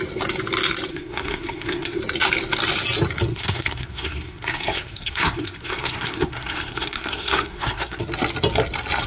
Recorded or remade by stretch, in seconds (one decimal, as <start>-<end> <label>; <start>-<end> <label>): 0.0-0.9 recorded; 0.9-2.0 remade; 2.0-3.3 recorded; 3.3-8.0 remade; 8.0-9.1 recorded